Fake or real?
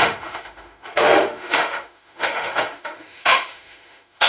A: fake